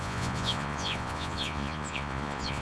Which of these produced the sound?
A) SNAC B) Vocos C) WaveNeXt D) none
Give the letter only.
B